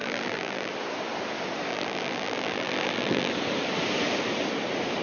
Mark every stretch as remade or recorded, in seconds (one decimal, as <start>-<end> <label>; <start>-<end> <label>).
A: 0.0-0.7 remade; 0.7-1.7 recorded; 1.7-3.3 remade; 3.3-5.0 recorded